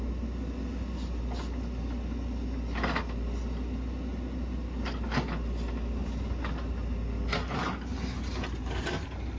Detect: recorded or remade recorded